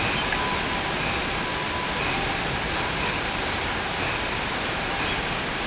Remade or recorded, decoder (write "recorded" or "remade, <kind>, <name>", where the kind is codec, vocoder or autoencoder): recorded